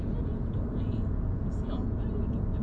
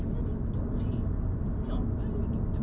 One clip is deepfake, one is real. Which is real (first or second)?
second